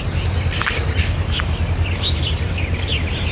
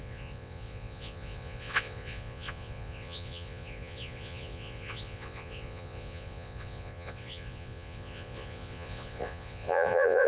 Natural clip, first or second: first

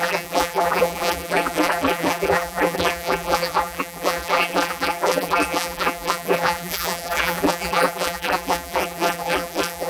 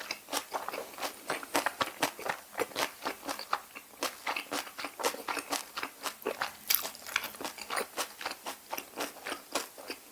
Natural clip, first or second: second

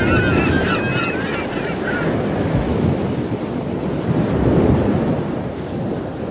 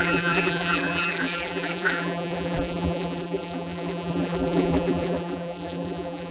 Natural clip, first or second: first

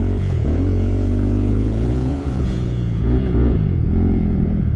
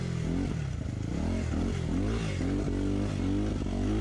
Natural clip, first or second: second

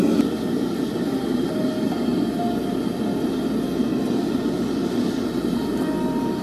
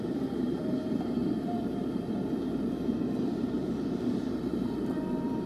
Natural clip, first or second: first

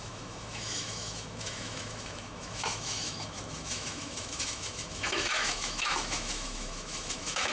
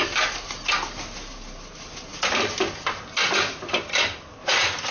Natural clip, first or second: second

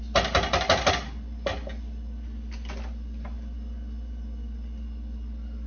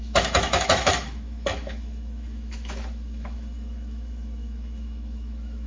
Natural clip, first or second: first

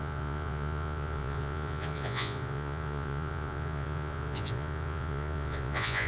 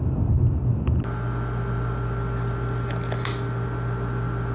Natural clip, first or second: second